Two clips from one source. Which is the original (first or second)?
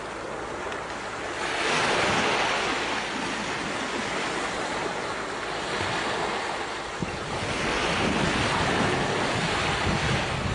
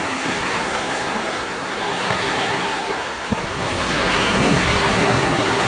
first